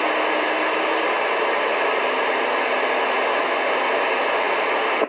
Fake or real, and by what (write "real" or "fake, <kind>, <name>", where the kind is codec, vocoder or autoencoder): real